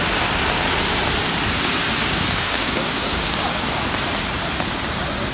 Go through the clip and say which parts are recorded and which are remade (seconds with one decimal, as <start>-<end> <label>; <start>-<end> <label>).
0.0-2.0 recorded; 2.0-3.4 remade; 3.4-5.3 recorded